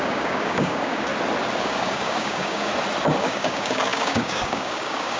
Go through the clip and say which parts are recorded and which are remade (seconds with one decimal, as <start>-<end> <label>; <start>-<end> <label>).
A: 0.0-1.1 remade; 1.1-1.6 recorded; 1.6-2.7 remade; 2.7-3.2 recorded; 3.2-5.2 remade